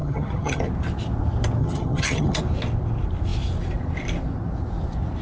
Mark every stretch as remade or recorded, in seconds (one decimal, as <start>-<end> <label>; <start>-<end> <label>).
0.0-0.7 remade; 0.7-1.6 recorded; 1.6-2.4 remade; 2.4-5.2 recorded